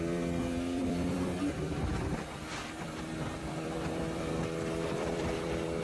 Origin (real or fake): fake